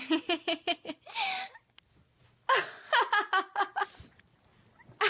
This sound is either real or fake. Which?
real